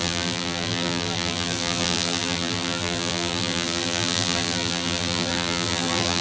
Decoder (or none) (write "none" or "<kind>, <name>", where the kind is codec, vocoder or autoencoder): vocoder, BigVGAN v2